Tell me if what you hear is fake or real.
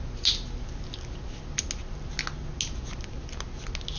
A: real